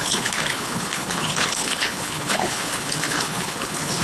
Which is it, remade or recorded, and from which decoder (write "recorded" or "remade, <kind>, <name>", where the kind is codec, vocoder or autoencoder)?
remade, codec, HILCodec